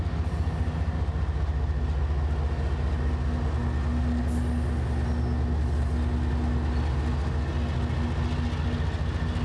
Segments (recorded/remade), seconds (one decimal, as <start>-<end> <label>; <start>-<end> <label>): 0.0-9.4 recorded